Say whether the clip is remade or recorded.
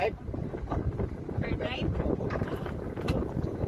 remade